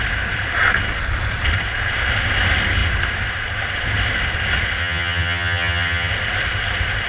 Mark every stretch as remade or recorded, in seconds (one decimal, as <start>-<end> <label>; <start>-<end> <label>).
0.0-4.8 recorded; 4.8-6.1 remade; 6.1-7.1 recorded